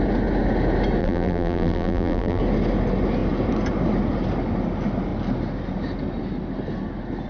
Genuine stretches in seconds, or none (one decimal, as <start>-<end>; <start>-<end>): 0.0-1.0; 2.4-7.3